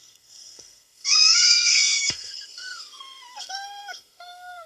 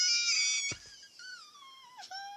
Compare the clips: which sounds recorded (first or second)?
second